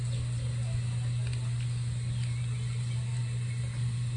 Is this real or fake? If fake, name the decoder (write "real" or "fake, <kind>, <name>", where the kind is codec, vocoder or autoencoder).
real